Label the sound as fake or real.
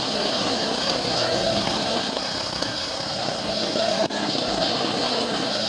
fake